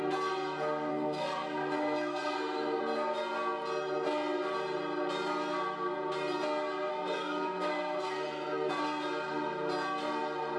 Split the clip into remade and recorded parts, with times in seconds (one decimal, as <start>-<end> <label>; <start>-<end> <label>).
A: 0.0-0.9 recorded; 0.9-2.8 remade; 2.8-6.9 recorded; 6.9-8.7 remade; 8.7-10.6 recorded